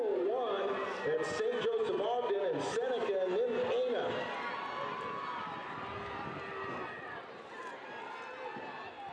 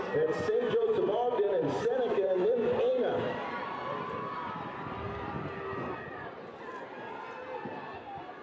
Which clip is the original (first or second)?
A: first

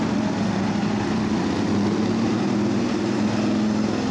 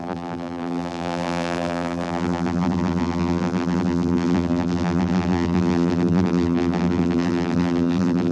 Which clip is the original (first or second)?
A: first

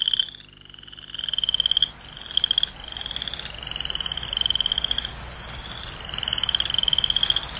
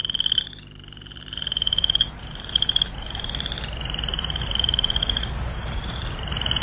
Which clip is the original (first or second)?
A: first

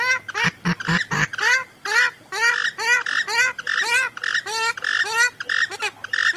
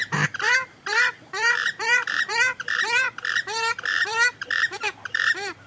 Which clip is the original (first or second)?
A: first